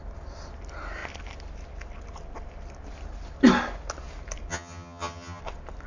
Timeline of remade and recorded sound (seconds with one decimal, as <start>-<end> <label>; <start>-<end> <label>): 0.0-4.5 recorded; 4.5-5.4 remade; 5.4-5.9 recorded